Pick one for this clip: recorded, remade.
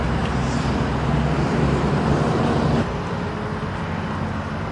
recorded